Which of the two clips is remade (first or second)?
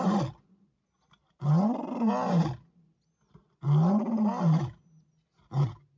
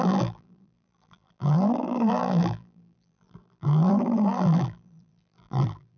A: second